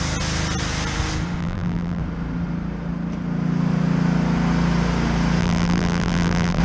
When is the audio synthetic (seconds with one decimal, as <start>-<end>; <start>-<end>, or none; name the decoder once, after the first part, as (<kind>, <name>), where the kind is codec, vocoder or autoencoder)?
1.4-2.0 (vocoder, BigVGAN v2); 5.4-6.6